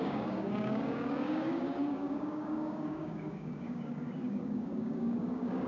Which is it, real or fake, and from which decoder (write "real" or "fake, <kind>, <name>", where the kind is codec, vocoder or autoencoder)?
fake, codec, DAC